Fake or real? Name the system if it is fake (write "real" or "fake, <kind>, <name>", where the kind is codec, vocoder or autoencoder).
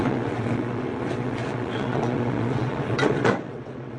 fake, vocoder, WaveNeXt